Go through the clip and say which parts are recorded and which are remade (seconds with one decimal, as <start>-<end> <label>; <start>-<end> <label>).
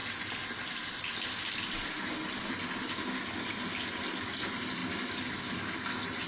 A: 0.0-6.3 recorded